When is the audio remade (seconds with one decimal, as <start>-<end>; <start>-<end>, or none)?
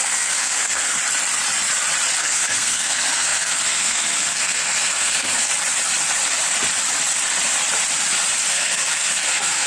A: 0.0-1.0; 2.2-5.5; 8.5-9.7